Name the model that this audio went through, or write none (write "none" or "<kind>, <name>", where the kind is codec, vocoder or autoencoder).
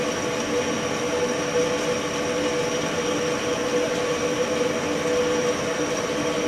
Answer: none